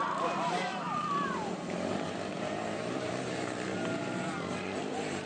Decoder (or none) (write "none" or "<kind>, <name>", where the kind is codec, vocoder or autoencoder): vocoder, BigVGAN v2